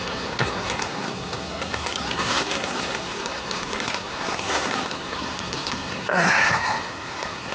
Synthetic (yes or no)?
yes